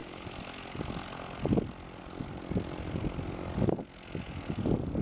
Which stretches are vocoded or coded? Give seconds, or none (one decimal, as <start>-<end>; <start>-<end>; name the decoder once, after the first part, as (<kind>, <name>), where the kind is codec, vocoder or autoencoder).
none